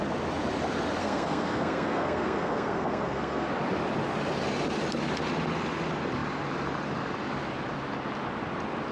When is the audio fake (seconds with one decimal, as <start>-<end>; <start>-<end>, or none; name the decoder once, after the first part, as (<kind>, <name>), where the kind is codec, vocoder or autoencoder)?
1.0-3.5 (codec, SNAC)